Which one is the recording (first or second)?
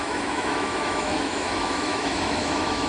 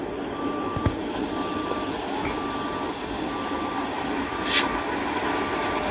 second